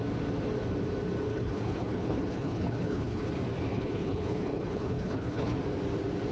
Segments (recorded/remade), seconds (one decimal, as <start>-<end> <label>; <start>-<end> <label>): 0.0-1.3 recorded; 1.3-3.3 remade; 3.3-3.7 recorded; 3.7-5.6 remade; 5.6-6.3 recorded